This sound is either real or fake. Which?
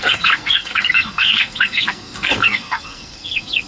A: fake